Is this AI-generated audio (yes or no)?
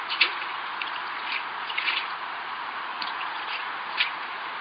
yes